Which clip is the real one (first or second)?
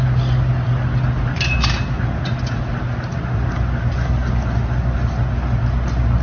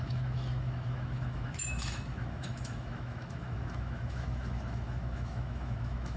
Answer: first